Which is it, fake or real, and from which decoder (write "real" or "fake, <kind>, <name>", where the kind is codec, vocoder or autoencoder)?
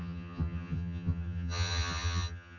fake, vocoder, HiFi-GAN